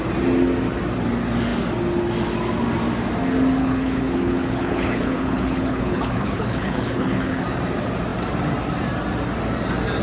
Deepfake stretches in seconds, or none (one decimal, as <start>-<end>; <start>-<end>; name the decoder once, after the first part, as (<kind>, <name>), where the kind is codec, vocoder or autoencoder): 3.6-7.4 (codec, HILCodec)

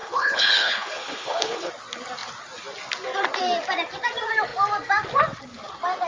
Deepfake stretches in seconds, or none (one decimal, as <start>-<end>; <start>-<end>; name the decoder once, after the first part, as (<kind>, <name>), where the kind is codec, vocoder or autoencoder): 0.0-1.7 (codec, HILCodec)

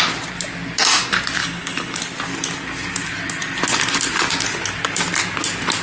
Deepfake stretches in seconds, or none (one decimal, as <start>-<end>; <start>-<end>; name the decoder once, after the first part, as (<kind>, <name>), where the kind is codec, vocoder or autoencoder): 1.4-2.0 (codec, HILCodec)

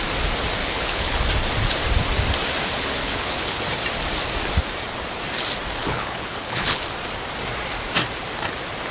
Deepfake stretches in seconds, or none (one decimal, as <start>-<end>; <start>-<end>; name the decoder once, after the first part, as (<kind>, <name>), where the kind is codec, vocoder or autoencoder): 0.6-1.2 (codec, HILCodec); 3.0-3.6; 5.8-6.8

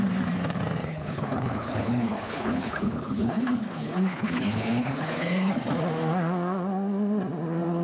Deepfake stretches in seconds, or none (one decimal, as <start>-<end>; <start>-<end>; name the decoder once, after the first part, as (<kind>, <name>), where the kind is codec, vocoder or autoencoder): 0.8-5.5 (codec, HILCodec)